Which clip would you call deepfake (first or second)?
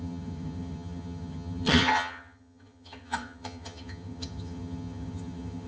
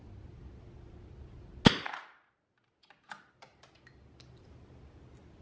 first